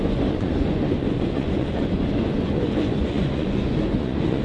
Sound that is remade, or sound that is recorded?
remade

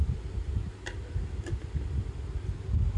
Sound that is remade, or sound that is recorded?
recorded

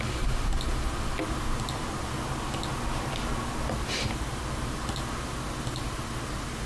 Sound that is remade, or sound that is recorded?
recorded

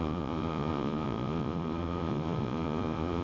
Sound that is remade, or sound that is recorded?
remade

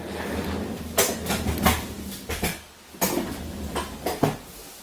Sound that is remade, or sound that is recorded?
recorded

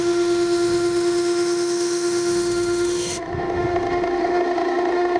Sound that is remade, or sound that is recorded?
remade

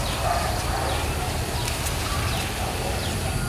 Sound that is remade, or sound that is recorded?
recorded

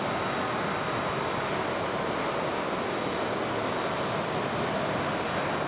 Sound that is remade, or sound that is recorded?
recorded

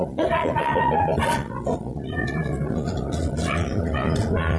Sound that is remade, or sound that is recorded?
remade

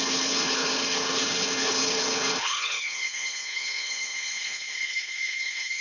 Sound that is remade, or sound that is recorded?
remade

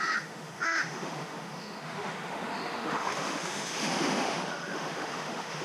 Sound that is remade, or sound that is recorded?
remade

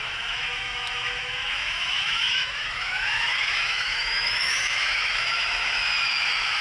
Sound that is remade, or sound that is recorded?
remade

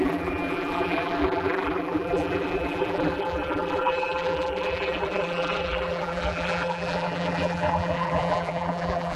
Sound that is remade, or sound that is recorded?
remade